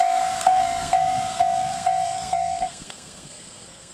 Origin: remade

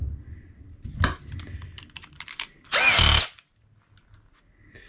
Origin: recorded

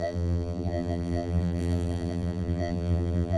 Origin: remade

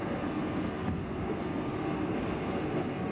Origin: remade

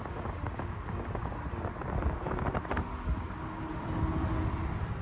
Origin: recorded